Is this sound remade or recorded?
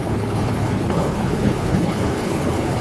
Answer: remade